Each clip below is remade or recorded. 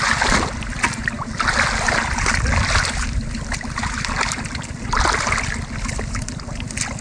recorded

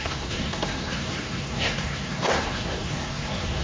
remade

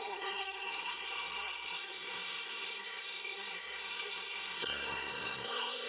remade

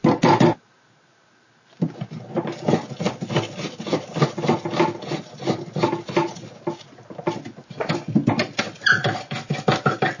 recorded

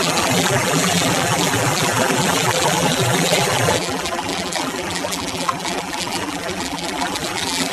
remade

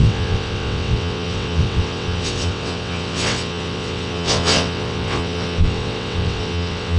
remade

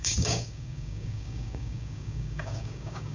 remade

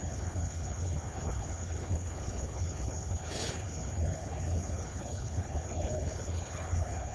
remade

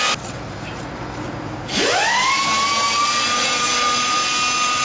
recorded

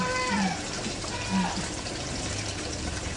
remade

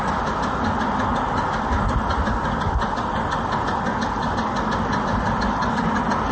recorded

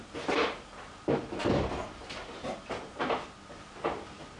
recorded